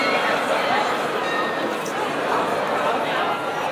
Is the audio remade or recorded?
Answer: remade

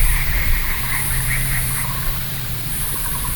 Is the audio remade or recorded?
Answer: remade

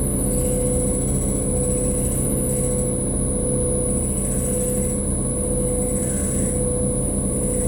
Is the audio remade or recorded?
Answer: recorded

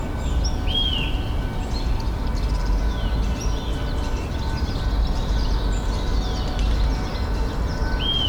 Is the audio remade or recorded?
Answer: recorded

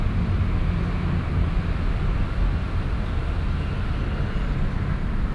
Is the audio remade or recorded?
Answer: recorded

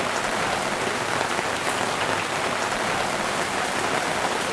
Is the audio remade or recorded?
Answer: recorded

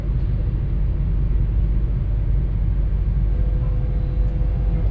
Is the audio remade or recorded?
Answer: recorded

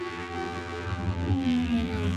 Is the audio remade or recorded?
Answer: remade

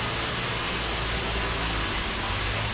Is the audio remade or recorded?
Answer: recorded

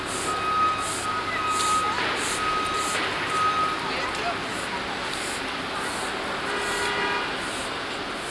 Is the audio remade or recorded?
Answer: recorded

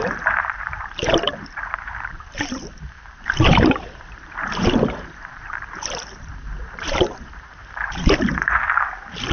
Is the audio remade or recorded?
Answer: remade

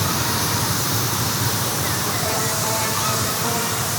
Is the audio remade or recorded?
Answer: remade